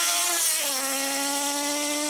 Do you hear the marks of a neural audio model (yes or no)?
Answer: no